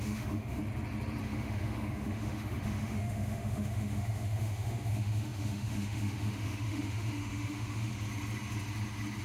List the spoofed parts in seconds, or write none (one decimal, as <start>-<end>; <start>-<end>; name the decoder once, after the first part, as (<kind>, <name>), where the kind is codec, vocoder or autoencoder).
0.0-0.6 (autoencoder, DAC-VAE); 1.2-7.9